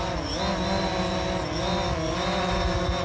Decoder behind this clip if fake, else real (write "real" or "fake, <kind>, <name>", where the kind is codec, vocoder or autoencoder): real